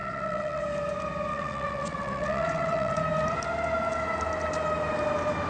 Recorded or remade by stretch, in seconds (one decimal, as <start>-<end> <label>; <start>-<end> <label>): 0.0-0.6 remade; 0.6-1.3 recorded; 1.3-3.0 remade; 3.0-5.5 recorded